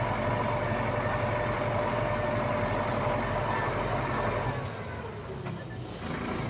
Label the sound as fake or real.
real